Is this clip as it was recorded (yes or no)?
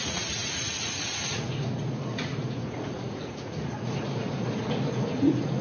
no